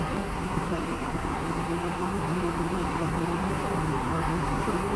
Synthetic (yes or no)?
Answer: yes